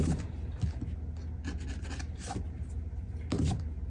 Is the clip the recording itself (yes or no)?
yes